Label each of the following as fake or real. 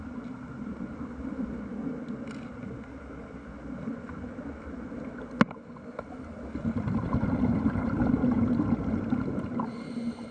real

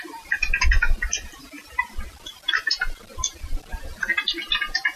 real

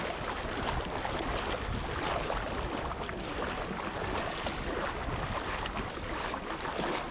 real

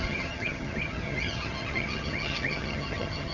fake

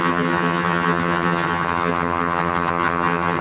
fake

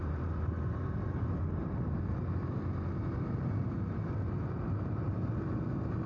fake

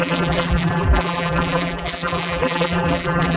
fake